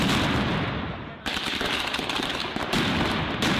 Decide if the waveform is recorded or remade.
recorded